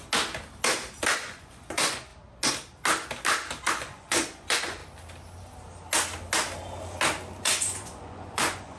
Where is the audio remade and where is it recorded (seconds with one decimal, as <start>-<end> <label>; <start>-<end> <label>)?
0.0-1.1 recorded; 1.1-2.1 remade; 2.1-3.7 recorded; 3.7-4.8 remade; 4.8-7.4 recorded; 7.4-8.8 remade